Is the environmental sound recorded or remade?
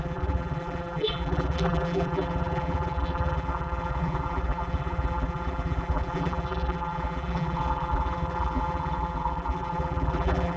remade